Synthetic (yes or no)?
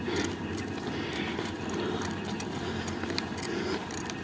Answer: no